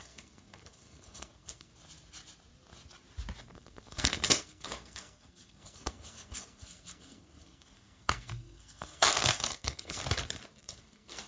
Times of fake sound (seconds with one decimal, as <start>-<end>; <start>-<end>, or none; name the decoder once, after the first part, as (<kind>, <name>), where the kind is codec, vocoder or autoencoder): 0.0-1.7 (codec, SNAC); 3.4-10.0; 10.6-11.3